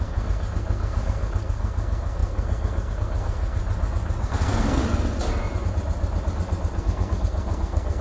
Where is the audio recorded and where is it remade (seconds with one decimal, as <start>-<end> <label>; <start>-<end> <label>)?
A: 0.0-3.6 remade; 3.6-4.2 recorded; 4.2-4.8 remade; 4.8-6.8 recorded; 6.8-8.0 remade